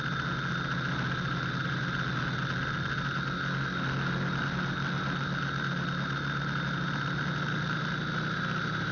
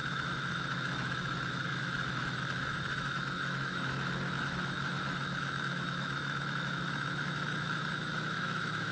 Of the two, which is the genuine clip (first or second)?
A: first